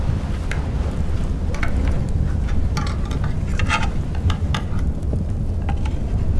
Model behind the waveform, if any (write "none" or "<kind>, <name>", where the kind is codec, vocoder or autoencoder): none